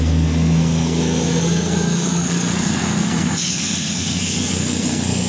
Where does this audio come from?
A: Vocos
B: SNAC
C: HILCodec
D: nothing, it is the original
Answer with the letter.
B